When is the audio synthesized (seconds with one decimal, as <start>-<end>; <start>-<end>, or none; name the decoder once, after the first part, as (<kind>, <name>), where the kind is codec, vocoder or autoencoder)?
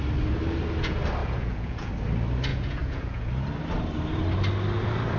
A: 1.2-1.9 (vocoder, Vocos); 2.5-3.3